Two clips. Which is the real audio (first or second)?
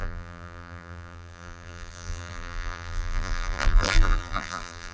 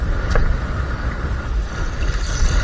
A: second